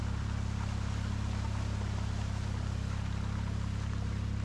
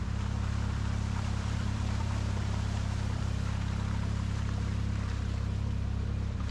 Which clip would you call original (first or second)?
first